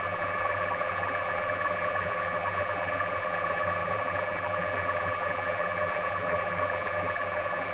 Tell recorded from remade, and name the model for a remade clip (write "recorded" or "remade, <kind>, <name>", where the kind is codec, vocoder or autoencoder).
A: remade, vocoder, BigVGAN v2